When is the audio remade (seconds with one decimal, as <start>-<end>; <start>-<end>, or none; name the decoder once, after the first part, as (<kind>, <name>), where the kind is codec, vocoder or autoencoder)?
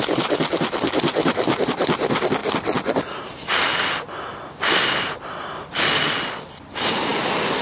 none